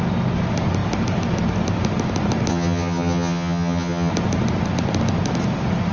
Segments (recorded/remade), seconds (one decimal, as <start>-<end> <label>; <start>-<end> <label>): 0.0-2.5 recorded; 2.5-4.1 remade; 4.1-5.9 recorded